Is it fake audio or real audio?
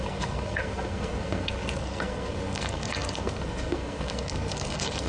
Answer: fake